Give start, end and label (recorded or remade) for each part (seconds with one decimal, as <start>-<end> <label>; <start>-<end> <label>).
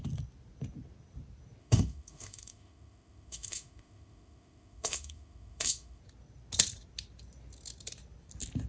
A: 0.0-1.6 recorded; 1.6-6.0 remade; 6.0-8.7 recorded